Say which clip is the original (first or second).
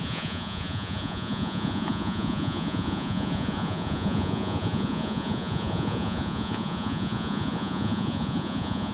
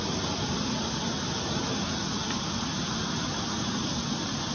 second